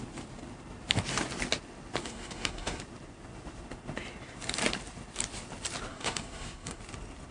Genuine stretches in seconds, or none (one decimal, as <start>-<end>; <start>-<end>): 0.0-2.0; 2.8-5.9; 6.8-7.3